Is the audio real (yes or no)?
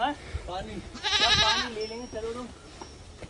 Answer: yes